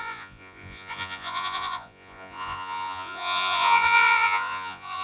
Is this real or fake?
fake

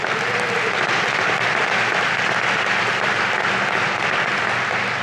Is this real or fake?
real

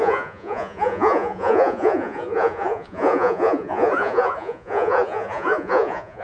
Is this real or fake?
fake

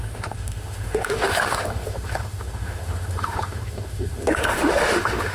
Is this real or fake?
fake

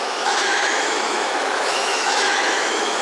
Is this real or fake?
fake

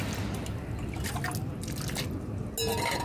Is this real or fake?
real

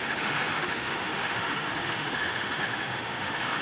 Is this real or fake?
fake